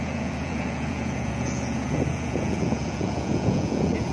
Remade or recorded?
remade